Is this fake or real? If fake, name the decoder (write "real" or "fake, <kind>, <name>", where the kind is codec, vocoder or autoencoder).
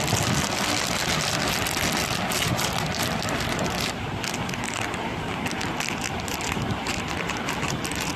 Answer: real